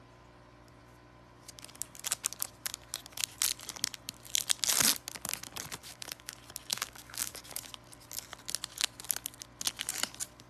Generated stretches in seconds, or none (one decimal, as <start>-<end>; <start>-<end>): 5.8-6.3; 6.7-7.6